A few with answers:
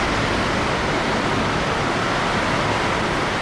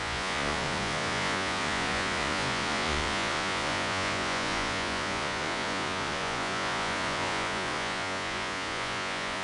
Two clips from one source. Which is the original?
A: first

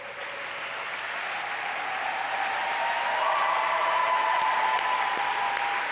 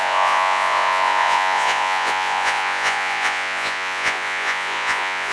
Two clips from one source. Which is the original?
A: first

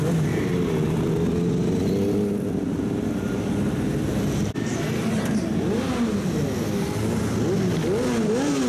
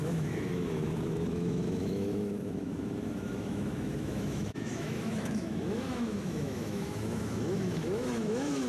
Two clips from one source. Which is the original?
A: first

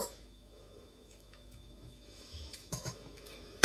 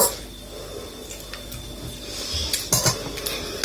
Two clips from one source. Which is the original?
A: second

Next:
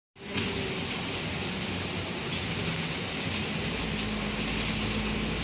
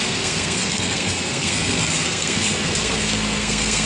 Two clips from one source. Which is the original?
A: first